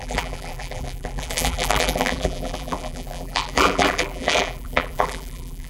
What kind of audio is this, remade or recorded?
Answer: remade